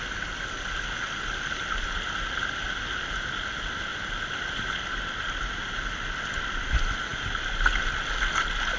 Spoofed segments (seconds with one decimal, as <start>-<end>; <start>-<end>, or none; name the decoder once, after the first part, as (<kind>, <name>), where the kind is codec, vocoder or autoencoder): none